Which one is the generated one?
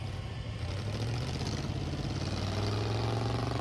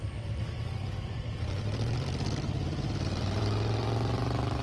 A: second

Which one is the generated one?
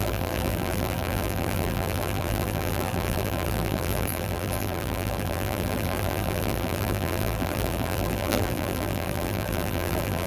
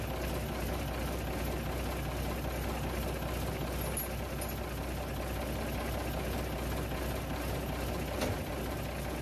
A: first